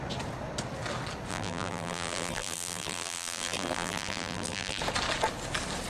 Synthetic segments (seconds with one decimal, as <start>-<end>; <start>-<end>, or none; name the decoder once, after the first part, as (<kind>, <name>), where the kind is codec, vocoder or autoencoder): 1.3-4.8 (vocoder, BigVGAN v2)